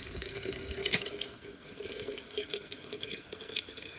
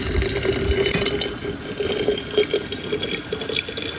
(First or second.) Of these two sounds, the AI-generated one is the first